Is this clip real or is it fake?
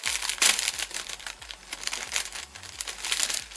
real